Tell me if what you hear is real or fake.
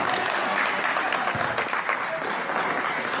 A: fake